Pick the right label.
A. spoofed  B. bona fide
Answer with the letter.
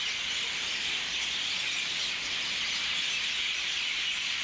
B